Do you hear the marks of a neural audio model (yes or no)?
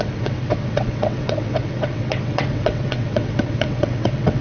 yes